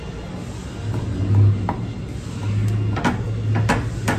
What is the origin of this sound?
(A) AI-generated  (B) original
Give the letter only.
B